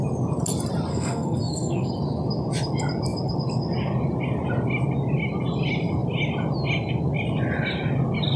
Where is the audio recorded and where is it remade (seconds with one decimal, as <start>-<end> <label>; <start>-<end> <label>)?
0.0-0.9 recorded; 0.9-1.9 remade; 1.9-8.4 recorded